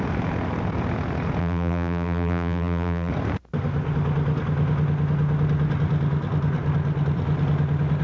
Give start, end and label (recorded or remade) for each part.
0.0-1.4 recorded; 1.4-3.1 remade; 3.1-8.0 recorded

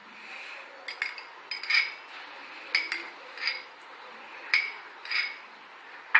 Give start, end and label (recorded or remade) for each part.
0.0-3.7 recorded; 3.7-6.2 remade

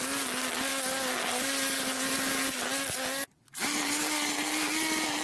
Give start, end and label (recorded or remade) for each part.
0.0-5.2 recorded